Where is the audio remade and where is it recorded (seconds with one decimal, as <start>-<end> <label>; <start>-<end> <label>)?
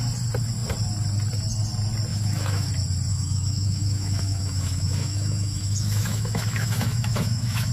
0.0-2.1 recorded; 2.1-2.7 remade; 2.7-3.1 recorded; 3.1-7.7 remade